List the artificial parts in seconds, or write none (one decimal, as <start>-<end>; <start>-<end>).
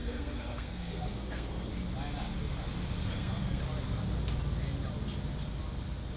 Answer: 0.0-1.7; 3.0-3.6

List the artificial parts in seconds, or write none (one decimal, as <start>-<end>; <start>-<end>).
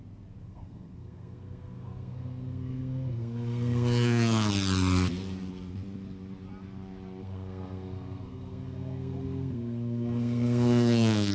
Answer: 0.4-4.5; 7.2-11.3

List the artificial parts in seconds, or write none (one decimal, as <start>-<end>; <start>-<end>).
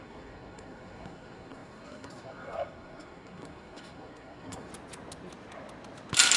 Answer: 0.0-4.7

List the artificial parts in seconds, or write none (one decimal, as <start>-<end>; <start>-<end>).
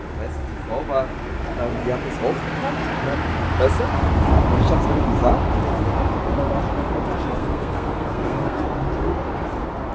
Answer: 7.4-8.6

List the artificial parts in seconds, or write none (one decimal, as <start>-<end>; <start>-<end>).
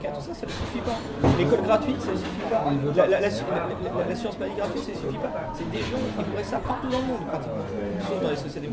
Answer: none